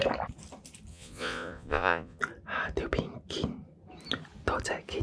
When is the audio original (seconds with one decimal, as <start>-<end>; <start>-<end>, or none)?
0.0-0.9; 2.2-5.0